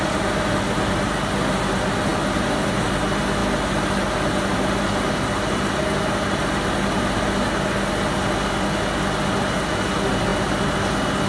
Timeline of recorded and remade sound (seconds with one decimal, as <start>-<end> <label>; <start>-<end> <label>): 0.0-2.1 recorded; 2.1-3.0 remade; 3.0-11.3 recorded